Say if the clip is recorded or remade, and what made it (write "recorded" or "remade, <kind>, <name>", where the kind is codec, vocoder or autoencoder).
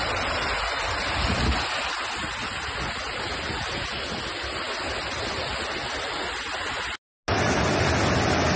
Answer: recorded